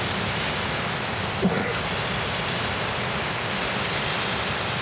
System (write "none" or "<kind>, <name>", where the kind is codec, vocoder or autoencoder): none